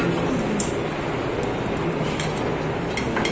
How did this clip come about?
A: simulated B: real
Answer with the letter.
B